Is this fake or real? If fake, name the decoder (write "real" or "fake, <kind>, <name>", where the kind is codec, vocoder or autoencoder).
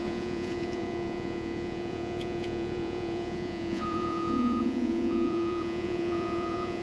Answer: fake, vocoder, Vocos